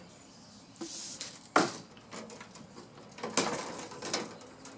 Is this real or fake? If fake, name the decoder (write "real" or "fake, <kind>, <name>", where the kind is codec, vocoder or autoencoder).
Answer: real